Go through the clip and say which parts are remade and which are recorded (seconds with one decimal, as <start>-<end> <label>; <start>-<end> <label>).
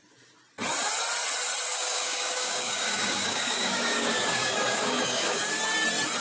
0.0-1.7 recorded; 1.7-5.4 remade; 5.4-6.2 recorded